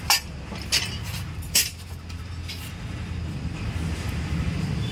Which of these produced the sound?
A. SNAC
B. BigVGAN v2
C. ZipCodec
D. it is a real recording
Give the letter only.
D